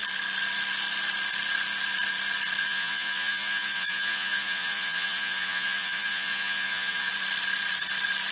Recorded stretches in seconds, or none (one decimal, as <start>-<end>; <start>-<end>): 0.0-2.6; 7.1-8.3